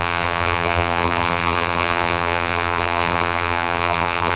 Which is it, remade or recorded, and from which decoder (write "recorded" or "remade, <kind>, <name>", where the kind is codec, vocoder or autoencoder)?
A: remade, vocoder, BigVGAN v2